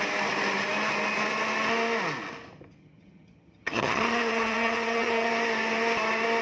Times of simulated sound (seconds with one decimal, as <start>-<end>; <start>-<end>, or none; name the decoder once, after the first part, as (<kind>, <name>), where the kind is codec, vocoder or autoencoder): 2.8-5.3 (vocoder, HiFi-GAN)